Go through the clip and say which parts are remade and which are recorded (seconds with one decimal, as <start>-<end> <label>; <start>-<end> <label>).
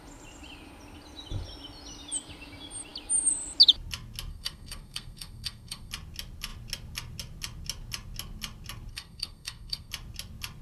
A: 0.0-4.3 recorded; 4.3-5.9 remade; 5.9-8.9 recorded; 8.9-9.9 remade; 9.9-10.6 recorded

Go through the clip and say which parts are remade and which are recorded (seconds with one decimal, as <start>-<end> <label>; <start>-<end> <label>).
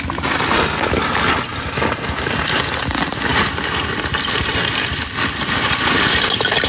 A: 0.0-6.7 recorded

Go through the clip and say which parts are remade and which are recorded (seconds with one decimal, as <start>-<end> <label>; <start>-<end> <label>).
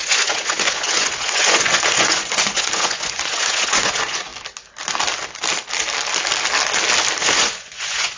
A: 0.0-4.3 remade; 4.3-7.2 recorded; 7.2-8.2 remade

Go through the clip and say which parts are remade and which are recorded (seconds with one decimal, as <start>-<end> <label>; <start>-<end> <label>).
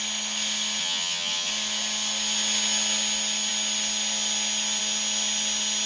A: 0.0-0.8 recorded; 0.8-1.5 remade; 1.5-5.9 recorded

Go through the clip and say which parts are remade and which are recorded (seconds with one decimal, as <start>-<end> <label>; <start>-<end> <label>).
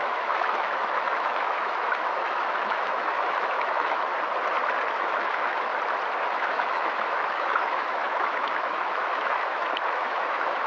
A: 0.0-4.1 remade; 4.1-5.0 recorded; 5.0-5.7 remade; 5.7-6.2 recorded; 6.2-10.7 remade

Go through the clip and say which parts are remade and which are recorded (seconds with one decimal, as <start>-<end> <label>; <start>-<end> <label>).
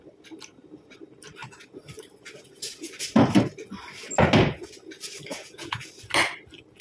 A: 0.0-5.3 recorded; 5.3-5.9 remade; 5.9-6.8 recorded